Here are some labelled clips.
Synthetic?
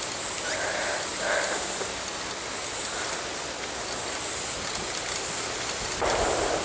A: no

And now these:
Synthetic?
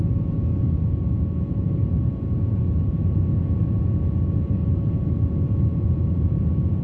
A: yes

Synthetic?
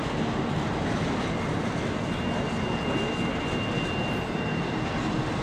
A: no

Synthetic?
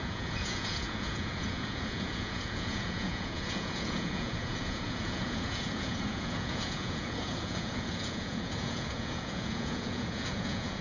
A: yes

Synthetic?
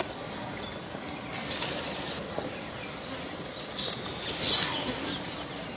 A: no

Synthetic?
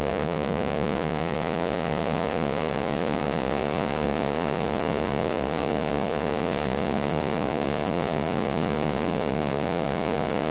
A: yes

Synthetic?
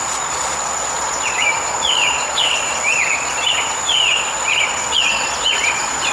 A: yes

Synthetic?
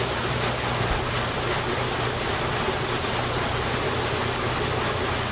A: no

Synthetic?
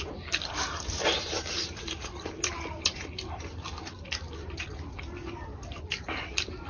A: no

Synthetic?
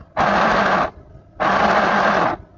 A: no